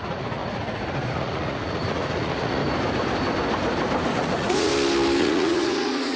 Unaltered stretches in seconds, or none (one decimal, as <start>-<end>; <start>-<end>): 2.6-4.1; 4.7-5.2